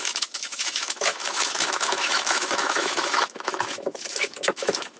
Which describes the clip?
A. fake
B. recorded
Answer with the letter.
A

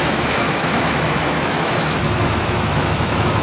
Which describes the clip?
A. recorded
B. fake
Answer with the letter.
B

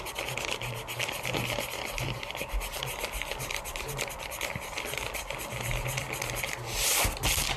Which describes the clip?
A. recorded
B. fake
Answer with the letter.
A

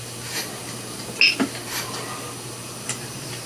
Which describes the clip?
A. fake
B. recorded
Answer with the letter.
B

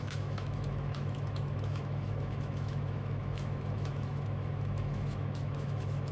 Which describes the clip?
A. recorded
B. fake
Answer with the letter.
B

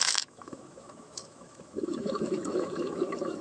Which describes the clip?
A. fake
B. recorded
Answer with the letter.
A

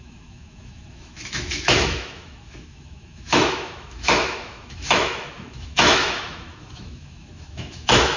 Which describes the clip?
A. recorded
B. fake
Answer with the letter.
B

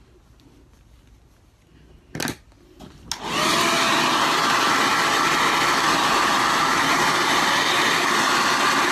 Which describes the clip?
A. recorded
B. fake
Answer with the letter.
A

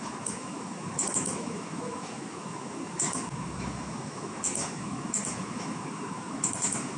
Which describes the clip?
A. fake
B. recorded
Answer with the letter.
A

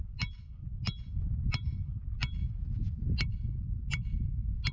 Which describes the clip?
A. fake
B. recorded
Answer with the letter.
B